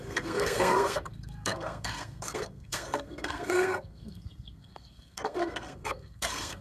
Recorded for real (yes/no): no